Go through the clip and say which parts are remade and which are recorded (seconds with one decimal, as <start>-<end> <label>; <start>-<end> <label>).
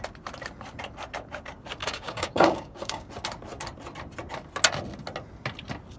0.0-1.8 recorded; 1.8-3.1 remade; 3.1-6.0 recorded